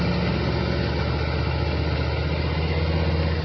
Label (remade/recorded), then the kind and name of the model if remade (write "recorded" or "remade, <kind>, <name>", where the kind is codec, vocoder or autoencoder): recorded